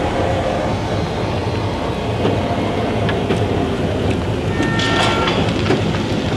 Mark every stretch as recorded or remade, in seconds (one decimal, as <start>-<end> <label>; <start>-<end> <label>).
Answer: 0.0-6.4 recorded